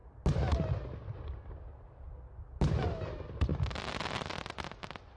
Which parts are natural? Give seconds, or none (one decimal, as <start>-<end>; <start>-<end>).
0.0-5.2